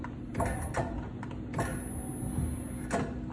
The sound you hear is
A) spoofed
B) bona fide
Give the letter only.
B